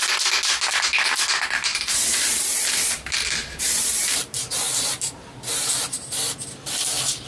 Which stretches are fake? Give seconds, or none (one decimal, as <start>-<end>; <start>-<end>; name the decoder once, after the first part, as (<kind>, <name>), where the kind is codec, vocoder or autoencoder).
1.7-6.1 (vocoder, BigVGAN v2)